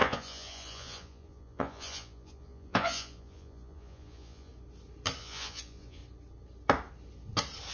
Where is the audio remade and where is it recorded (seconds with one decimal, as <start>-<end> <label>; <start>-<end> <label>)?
0.0-4.5 remade; 4.5-5.2 recorded; 5.2-6.0 remade; 6.0-7.7 recorded